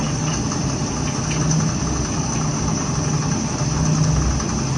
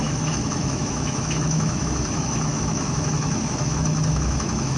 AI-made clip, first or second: second